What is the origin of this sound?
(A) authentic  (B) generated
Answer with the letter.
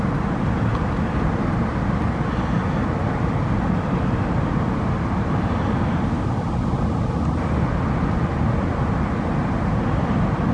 A